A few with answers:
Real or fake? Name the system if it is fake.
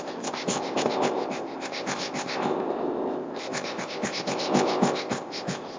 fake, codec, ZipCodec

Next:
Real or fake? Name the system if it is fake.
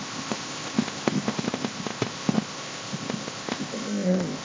fake, codec, ZipCodec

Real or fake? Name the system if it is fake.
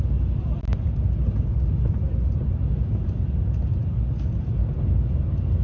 real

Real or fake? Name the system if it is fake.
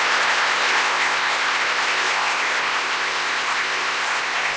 fake, codec, ZipCodec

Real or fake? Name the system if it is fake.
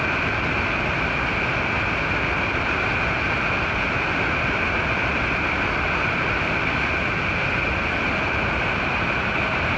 real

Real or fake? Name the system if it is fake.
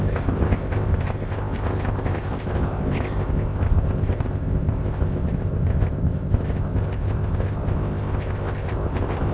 fake, codec, ZipCodec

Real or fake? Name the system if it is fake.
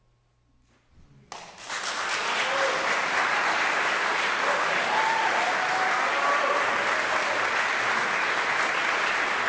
real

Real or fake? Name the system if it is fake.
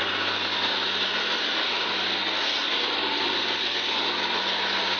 real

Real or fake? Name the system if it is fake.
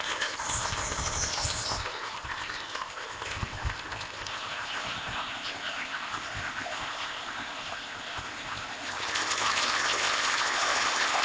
fake, codec, ZipCodec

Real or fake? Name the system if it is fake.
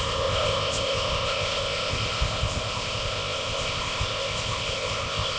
fake, codec, ZipCodec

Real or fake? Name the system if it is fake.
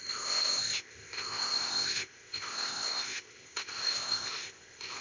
fake, codec, ZipCodec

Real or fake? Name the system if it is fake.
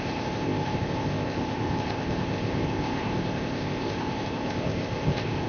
fake, codec, ZipCodec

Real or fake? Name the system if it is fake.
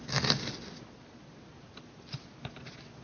real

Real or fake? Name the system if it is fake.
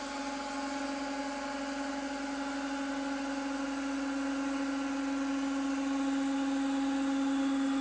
real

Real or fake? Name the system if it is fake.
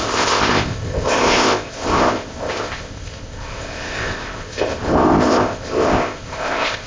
fake, codec, ZipCodec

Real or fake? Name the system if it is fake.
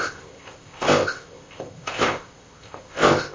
fake, codec, ZipCodec